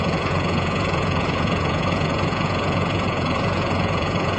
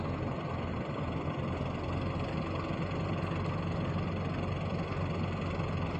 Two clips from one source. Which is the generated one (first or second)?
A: first